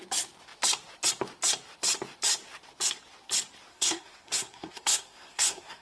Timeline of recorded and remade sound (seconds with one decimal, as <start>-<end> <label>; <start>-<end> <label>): 0.0-3.7 recorded; 3.7-5.8 remade